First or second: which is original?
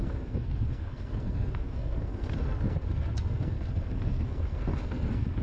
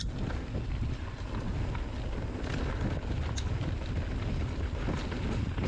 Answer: second